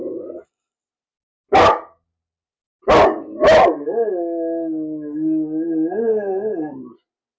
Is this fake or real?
real